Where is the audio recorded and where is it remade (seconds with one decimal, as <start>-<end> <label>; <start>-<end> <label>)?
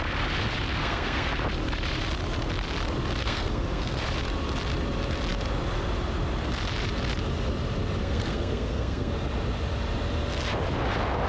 0.0-0.8 recorded; 0.8-1.3 remade; 1.3-3.2 recorded; 3.2-4.0 remade; 4.0-8.0 recorded; 8.0-9.1 remade; 9.1-11.3 recorded